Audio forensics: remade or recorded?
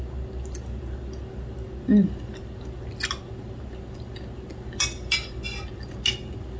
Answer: recorded